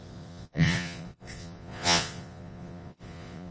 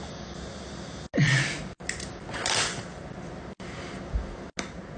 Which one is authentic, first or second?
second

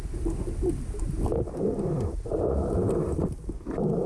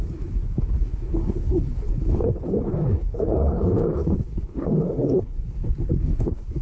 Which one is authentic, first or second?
first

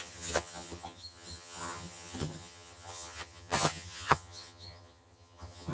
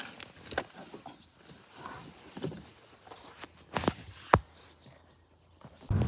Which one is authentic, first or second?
second